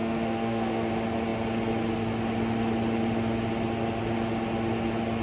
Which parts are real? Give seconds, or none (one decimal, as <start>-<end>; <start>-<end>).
0.9-5.2